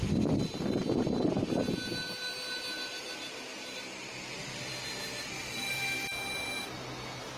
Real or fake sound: real